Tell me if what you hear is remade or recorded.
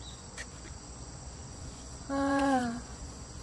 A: remade